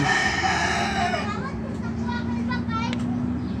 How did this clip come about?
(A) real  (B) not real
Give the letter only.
A